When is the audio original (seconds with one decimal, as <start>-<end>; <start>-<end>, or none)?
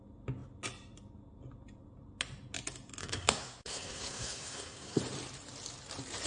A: 0.0-3.0; 5.0-6.3